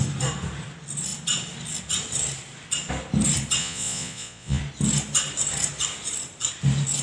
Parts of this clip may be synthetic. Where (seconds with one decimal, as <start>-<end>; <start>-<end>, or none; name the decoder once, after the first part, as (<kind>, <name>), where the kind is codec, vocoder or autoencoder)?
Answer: 3.6-4.6 (vocoder, Vocos)